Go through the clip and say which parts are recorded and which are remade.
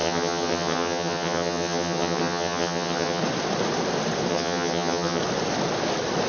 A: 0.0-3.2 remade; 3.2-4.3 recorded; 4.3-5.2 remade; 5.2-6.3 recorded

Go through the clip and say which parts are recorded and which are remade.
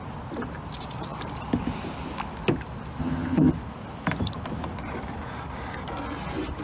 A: 0.0-3.0 recorded; 3.0-3.5 remade; 3.5-6.6 recorded